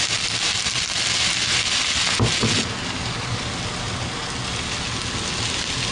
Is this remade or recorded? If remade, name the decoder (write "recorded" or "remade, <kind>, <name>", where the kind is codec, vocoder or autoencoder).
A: recorded